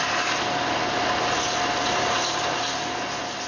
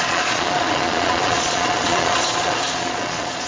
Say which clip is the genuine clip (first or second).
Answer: first